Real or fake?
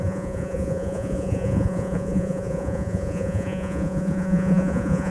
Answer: fake